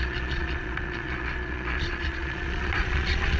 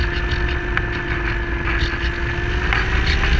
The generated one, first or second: first